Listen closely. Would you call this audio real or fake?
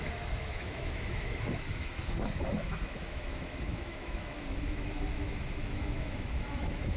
fake